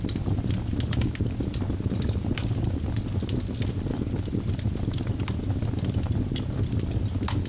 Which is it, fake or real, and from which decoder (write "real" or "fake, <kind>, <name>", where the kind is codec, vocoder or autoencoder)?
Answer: real